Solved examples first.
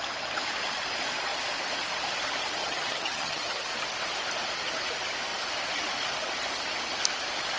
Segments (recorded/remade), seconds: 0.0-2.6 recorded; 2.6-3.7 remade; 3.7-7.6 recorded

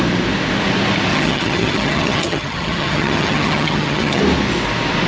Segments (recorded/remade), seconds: 0.0-1.1 recorded; 1.1-4.2 remade; 4.2-5.1 recorded

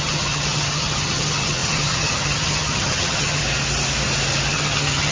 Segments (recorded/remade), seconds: 0.0-3.4 remade; 3.4-4.5 recorded; 4.5-5.1 remade